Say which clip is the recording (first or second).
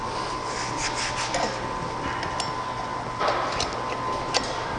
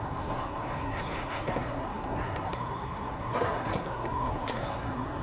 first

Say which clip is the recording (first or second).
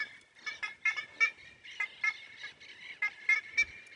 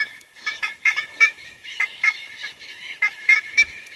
first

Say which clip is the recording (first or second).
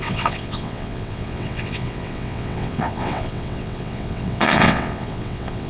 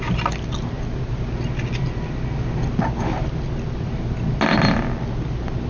second